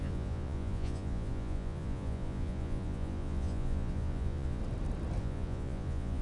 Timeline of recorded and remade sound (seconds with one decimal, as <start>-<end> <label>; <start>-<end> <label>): 0.0-4.6 remade; 4.6-5.2 recorded; 5.2-6.2 remade